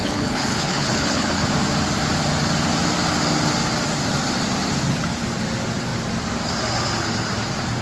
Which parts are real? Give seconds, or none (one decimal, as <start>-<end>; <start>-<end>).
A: 1.5-7.8